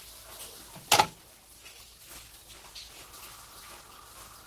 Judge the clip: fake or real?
real